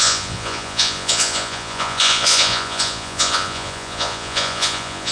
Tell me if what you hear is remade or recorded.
remade